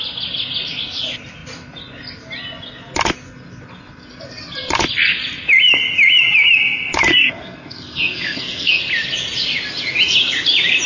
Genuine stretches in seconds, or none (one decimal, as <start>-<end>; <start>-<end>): 0.0-7.1; 8.8-10.9